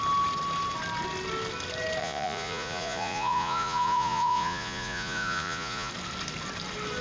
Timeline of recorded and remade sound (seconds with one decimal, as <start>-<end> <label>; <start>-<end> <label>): 0.0-2.0 recorded; 2.0-5.9 remade; 5.9-7.0 recorded